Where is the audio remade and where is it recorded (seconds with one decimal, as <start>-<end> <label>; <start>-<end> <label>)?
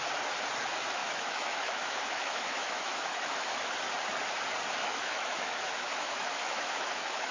0.0-1.0 recorded; 1.0-3.7 remade; 3.7-4.8 recorded; 4.8-7.3 remade